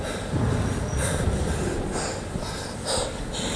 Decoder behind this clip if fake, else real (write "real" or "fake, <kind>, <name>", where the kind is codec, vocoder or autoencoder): real